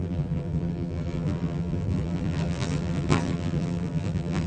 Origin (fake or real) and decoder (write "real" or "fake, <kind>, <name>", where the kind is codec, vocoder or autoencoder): fake, vocoder, BigVGAN v2